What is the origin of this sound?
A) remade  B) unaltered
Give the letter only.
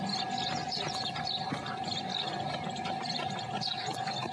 B